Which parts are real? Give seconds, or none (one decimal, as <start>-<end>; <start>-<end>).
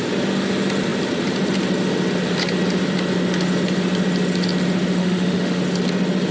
0.0-5.0; 5.6-6.3